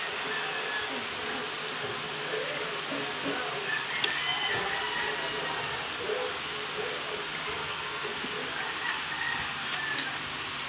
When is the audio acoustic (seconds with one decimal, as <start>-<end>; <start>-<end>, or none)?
0.0-7.6; 8.2-10.7